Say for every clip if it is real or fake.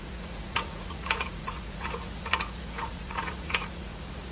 fake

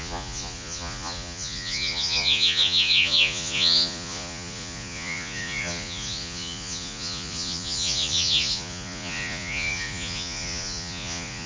fake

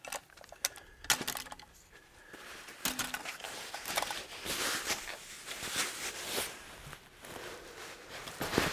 real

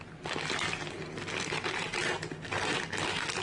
fake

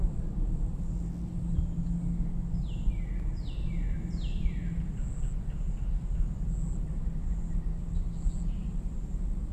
real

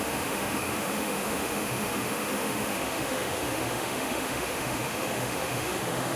fake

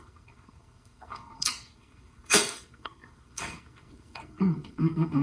fake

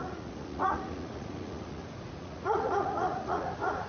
fake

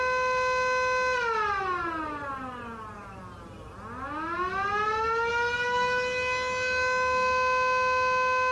real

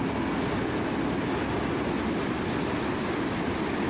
real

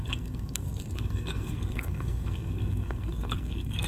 fake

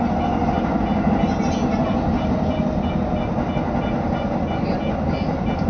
real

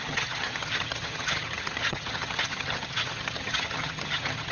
fake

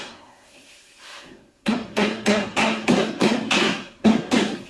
fake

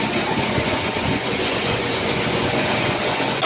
fake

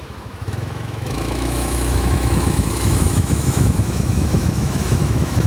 fake